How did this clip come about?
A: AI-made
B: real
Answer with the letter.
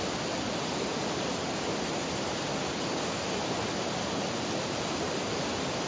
B